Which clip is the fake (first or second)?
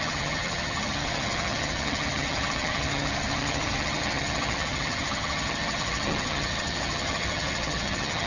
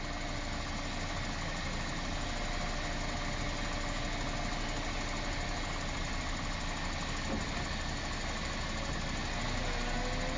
first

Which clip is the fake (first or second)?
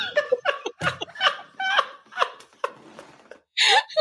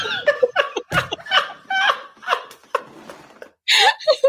first